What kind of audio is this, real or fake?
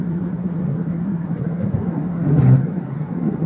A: fake